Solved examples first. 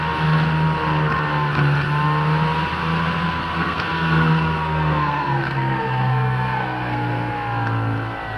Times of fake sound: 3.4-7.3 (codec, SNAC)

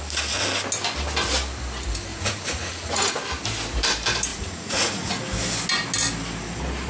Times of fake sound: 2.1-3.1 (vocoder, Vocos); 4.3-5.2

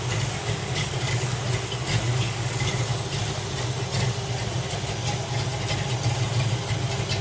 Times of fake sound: 0.4-1.4 (codec, DAC); 2.1-2.7

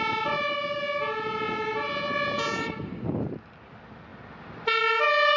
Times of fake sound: none

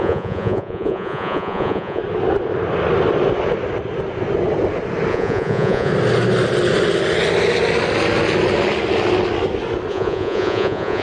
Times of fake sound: 0.0-2.0 (vocoder, Vocos); 5.1-5.9; 9.9-11.0

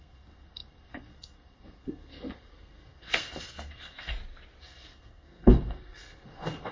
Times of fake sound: 0.0-4.1 (codec, SNAC); 4.6-6.7